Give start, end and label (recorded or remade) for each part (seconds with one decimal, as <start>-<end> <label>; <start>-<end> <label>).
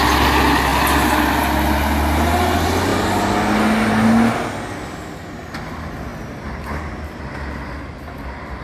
0.0-8.6 recorded